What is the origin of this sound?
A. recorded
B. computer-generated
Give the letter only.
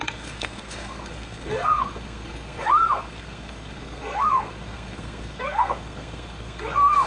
B